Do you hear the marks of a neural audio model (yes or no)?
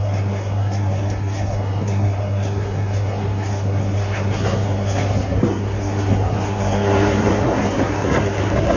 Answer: yes